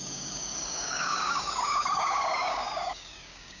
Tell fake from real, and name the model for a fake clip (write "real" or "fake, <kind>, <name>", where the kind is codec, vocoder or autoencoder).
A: fake, codec, DAC